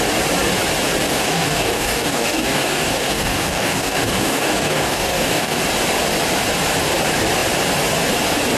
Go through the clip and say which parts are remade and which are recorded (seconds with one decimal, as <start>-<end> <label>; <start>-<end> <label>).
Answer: 0.0-1.0 recorded; 1.0-5.6 remade; 5.6-8.6 recorded